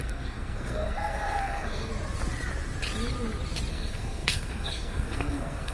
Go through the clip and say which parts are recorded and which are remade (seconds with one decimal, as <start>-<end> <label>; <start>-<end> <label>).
0.0-1.9 remade; 1.9-3.7 recorded; 3.7-5.7 remade

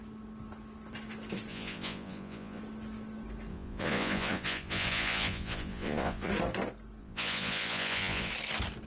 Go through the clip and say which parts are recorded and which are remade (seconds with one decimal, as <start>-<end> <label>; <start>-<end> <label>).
0.0-1.5 recorded; 1.5-2.6 remade; 2.6-3.5 recorded; 3.5-6.3 remade; 6.3-7.0 recorded; 7.0-8.3 remade; 8.3-8.9 recorded